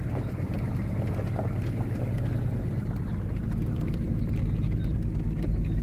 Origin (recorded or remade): recorded